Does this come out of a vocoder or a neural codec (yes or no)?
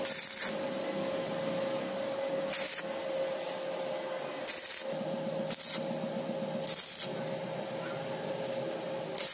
no